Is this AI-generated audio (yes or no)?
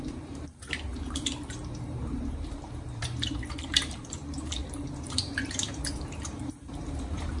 yes